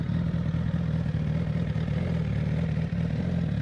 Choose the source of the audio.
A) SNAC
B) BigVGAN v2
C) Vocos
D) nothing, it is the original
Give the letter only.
D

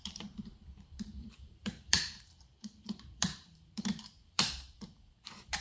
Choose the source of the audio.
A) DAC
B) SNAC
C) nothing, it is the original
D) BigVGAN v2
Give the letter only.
D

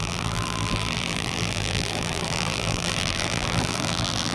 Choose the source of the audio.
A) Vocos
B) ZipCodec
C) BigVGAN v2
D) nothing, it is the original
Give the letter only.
C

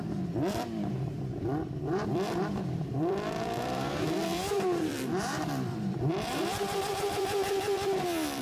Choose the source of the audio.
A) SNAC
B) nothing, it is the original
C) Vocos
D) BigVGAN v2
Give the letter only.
D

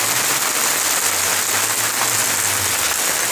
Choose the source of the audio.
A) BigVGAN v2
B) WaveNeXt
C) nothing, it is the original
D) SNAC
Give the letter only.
C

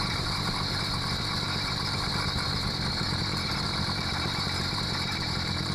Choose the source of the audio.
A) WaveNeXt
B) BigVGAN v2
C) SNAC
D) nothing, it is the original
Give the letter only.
B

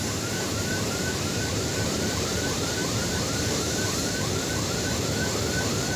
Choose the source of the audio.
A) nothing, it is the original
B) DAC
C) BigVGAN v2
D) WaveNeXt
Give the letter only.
C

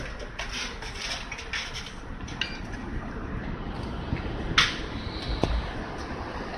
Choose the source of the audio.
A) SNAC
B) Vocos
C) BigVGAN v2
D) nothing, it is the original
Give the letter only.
D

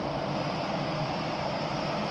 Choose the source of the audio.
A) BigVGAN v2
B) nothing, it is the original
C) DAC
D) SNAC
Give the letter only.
A